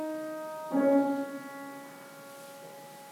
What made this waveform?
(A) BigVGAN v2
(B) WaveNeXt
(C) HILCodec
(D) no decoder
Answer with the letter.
D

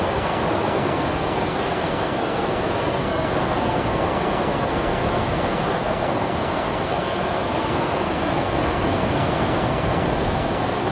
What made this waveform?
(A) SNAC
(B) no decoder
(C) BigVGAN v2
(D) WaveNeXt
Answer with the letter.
A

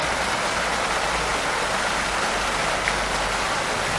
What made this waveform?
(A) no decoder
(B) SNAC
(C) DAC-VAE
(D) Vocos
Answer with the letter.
A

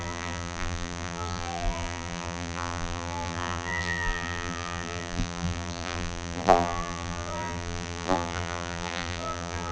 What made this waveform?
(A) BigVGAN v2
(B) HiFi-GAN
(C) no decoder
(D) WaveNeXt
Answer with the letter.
A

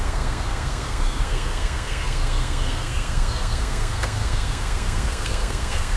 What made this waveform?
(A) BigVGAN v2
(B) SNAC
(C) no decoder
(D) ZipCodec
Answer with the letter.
B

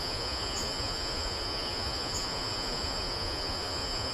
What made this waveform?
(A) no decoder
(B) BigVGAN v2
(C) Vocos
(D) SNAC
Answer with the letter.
C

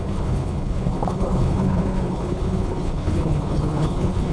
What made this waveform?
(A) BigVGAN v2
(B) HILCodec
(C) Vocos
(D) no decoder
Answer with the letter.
B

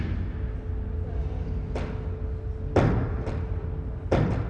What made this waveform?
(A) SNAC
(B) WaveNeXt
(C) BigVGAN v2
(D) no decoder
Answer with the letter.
D